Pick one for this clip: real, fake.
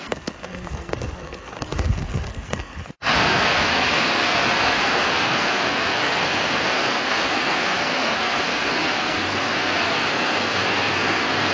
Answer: fake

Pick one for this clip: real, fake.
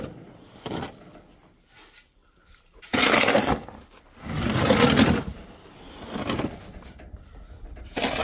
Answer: fake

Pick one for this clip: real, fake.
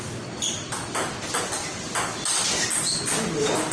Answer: real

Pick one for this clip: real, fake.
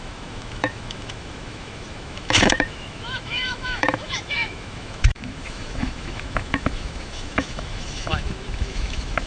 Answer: fake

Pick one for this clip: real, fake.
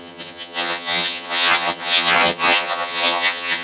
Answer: fake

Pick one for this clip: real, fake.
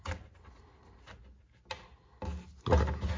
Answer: real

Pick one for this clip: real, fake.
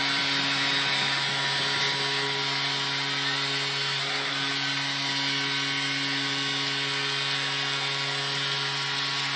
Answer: real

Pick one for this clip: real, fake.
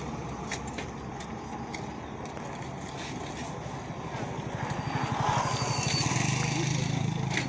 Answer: real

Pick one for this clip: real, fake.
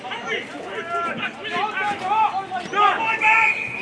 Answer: real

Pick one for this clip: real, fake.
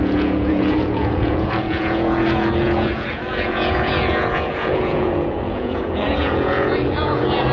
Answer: fake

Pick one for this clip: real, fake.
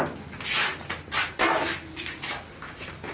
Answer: real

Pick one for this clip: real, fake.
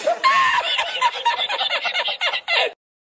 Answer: real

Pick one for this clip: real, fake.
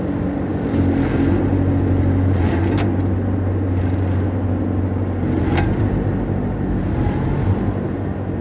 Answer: real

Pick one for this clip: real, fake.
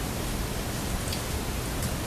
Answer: real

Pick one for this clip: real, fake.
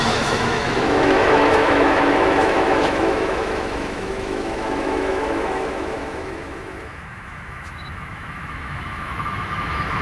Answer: fake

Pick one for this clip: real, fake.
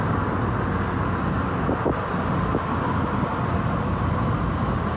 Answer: real